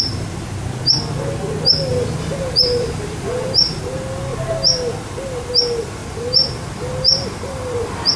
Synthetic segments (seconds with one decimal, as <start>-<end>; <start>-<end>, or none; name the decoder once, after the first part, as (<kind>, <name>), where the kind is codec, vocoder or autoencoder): 1.9-3.8 (vocoder, BigVGAN v2); 6.0-8.2

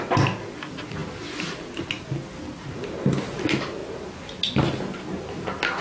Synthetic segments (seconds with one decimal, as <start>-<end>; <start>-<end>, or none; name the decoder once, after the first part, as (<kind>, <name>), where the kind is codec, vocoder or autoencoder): none

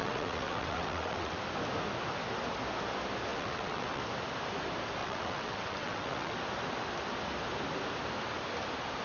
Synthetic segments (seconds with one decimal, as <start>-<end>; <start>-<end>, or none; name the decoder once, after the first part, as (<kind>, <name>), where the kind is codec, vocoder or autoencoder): 0.0-1.4 (vocoder, WaveNeXt); 3.3-4.0; 5.0-6.3

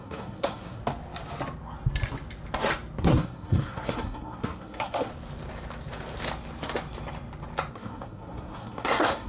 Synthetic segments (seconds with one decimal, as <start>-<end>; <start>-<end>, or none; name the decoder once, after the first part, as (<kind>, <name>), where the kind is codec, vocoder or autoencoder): 0.0-0.8 (codec, SNAC); 3.0-5.1; 7.7-9.3

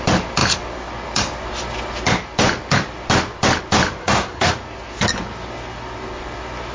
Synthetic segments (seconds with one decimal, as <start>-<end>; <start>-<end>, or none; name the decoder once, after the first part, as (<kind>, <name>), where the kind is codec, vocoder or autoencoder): 4.0-4.5 (codec, SNAC)

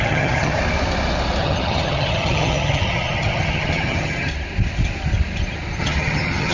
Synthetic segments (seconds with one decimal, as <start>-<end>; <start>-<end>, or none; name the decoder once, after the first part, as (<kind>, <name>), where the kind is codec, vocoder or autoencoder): 0.0-0.6 (vocoder, HiFi-GAN); 1.4-4.3; 5.8-6.5

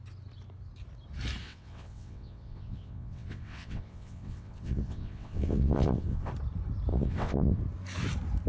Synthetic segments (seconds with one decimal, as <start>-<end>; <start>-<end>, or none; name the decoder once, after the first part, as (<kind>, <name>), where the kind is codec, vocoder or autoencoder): 1.4-6.3 (vocoder, WaveNeXt); 6.9-7.6